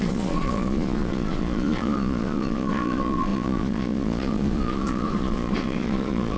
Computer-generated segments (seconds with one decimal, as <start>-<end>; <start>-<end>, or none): 0.0-6.4